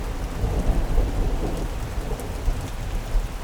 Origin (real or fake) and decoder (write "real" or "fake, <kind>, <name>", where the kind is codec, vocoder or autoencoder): real